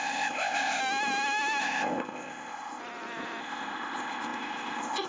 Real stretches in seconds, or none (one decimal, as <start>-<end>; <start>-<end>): 0.8-1.6; 2.8-3.4